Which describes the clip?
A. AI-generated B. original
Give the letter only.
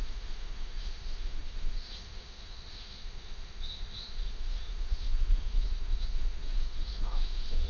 A